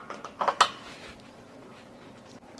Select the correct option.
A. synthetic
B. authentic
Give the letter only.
B